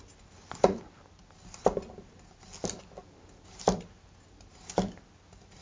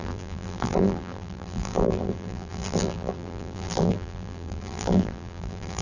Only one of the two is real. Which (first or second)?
first